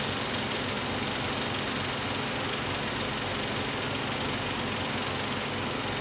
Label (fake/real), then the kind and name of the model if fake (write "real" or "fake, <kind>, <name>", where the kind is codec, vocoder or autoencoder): real